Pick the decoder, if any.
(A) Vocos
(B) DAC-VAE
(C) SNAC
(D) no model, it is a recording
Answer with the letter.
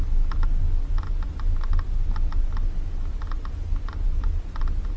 D